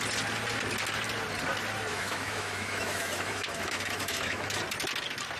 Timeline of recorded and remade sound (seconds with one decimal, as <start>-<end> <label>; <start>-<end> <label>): 0.0-1.9 recorded; 1.9-4.6 remade; 4.6-5.4 recorded